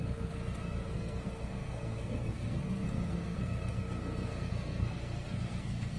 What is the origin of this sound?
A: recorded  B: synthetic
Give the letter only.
B